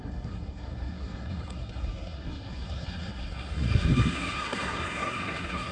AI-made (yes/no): yes